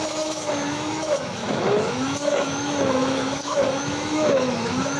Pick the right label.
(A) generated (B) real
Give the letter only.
A